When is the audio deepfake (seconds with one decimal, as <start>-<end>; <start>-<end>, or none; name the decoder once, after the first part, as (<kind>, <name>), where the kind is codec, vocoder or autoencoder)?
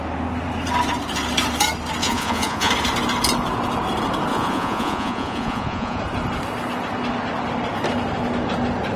2.0-2.7 (vocoder, Vocos); 4.3-6.0